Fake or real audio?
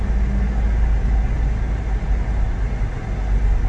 real